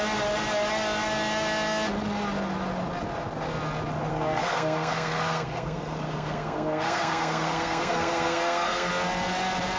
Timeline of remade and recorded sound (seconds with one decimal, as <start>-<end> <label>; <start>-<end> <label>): 0.0-4.1 recorded; 4.1-8.9 remade; 8.9-9.8 recorded